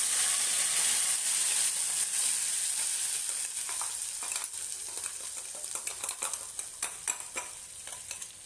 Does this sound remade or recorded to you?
recorded